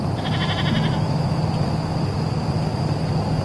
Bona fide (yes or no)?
yes